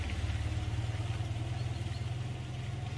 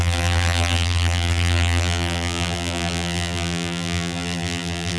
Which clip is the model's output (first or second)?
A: second